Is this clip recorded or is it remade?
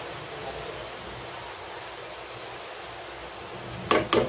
recorded